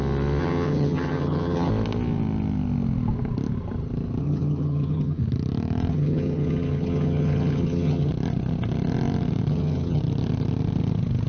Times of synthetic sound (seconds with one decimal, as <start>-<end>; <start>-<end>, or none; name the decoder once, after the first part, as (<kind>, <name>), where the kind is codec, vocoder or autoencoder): 0.4-1.7 (vocoder, HiFi-GAN); 4.2-5.2; 5.9-8.1; 9.5-10.0